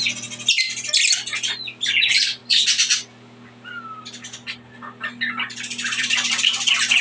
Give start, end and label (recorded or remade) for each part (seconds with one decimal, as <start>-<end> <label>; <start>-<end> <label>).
0.0-1.8 recorded; 1.8-2.4 remade; 2.4-6.0 recorded; 6.0-7.0 remade